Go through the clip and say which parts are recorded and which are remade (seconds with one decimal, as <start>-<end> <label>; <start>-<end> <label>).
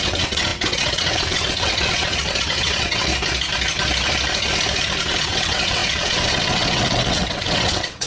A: 0.0-3.1 remade; 3.1-5.0 recorded; 5.0-8.1 remade